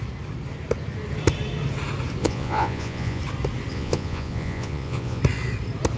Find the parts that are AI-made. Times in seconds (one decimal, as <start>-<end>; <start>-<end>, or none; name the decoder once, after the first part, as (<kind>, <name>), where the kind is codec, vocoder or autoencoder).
2.2-3.2 (vocoder, Vocos); 3.7-5.2